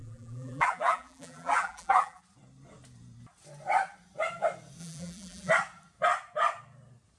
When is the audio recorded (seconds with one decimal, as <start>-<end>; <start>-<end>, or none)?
2.2-4.8; 5.5-7.2